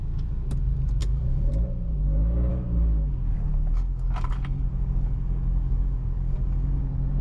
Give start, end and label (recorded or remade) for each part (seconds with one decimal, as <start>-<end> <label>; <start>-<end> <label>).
0.0-1.0 recorded; 1.0-1.5 remade; 1.5-2.5 recorded; 2.5-6.8 remade; 6.8-7.2 recorded